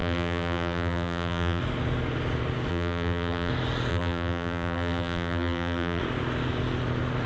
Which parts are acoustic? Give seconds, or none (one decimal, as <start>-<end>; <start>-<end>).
1.6-2.7; 3.5-3.9; 6.0-7.3